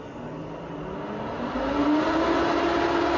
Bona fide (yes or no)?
yes